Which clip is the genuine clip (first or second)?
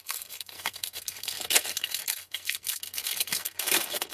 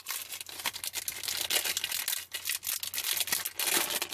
second